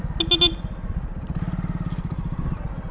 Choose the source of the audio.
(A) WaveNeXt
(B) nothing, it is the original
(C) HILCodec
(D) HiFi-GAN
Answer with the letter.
B